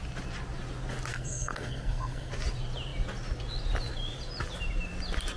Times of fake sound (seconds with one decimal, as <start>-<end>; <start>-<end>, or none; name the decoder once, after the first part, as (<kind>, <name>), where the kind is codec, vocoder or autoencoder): 1.1-2.3 (codec, SNAC)